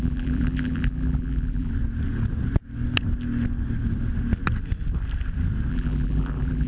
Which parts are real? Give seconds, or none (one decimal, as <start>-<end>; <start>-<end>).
1.7-5.7